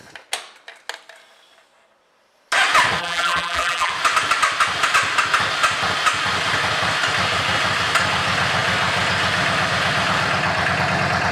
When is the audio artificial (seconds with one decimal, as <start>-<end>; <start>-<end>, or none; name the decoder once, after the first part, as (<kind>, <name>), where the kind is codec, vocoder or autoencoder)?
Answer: 3.0-3.9 (vocoder, BigVGAN v2)